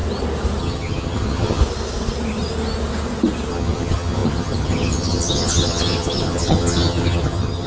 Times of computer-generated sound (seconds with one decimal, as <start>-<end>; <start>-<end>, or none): 0.6-1.6; 3.5-7.7